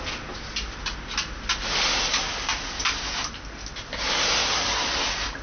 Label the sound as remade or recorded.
recorded